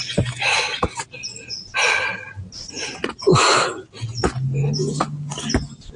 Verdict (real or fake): real